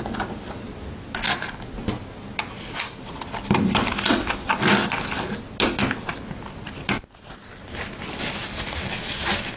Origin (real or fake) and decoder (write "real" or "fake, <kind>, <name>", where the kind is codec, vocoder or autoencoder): real